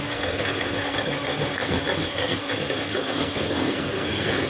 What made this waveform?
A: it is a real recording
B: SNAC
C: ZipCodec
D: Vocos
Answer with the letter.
B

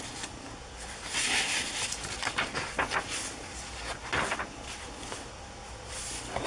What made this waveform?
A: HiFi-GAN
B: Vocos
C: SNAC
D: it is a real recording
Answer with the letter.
D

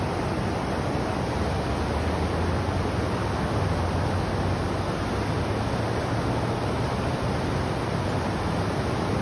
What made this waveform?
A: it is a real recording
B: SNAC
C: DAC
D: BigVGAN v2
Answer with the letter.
A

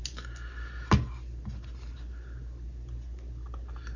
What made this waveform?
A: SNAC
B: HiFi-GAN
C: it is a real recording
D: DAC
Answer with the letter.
C